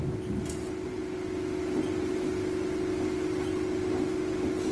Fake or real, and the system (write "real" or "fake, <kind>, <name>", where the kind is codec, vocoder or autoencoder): real